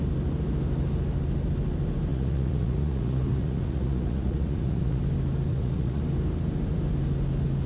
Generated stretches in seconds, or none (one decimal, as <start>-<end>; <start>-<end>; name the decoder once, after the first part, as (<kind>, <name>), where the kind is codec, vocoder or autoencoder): 2.1-5.0 (vocoder, Vocos); 5.5-6.0